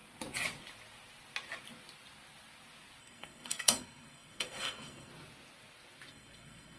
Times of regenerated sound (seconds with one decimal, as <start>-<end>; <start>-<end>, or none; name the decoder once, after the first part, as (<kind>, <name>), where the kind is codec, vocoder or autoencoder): 3.0-5.1 (codec, SNAC); 6.1-6.8